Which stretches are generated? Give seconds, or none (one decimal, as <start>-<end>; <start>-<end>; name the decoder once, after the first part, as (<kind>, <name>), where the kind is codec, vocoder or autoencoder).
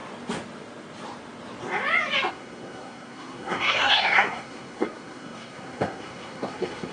2.3-6.9 (codec, SNAC)